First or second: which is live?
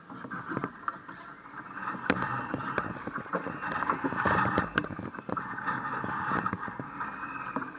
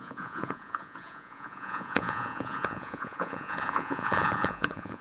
first